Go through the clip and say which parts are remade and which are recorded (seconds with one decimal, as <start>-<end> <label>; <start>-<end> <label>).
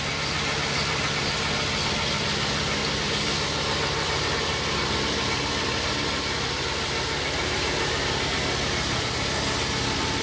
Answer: 0.0-10.2 recorded